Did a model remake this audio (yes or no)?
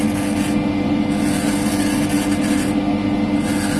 no